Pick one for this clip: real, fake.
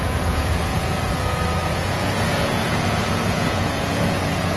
fake